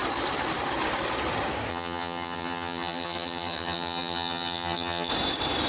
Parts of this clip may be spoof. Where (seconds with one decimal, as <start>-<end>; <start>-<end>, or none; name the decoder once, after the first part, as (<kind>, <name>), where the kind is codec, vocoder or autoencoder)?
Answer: 1.7-5.1 (vocoder, HiFi-GAN)